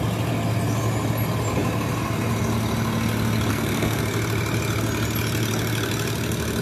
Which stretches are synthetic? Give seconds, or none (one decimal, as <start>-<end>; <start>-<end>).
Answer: 3.5-4.0